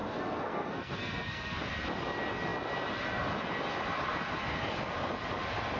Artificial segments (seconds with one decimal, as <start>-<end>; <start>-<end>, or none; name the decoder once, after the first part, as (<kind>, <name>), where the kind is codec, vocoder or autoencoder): 0.0-1.6 (codec, SNAC)